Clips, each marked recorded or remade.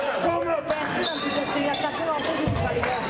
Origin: recorded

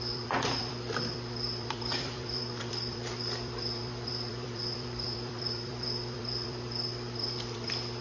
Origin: remade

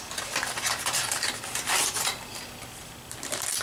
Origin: recorded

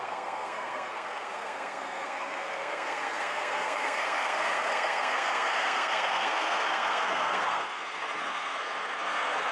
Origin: remade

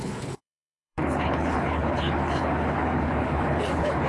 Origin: remade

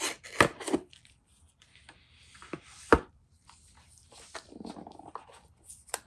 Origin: remade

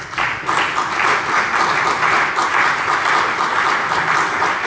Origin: recorded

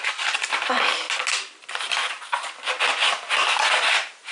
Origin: recorded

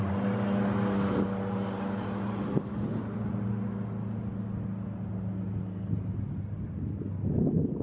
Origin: recorded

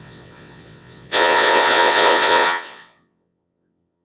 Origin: remade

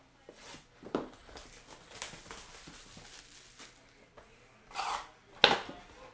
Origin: recorded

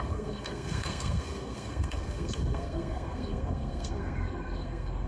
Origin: remade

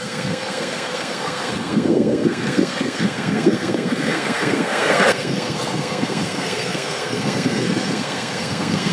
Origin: remade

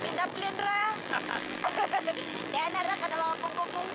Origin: remade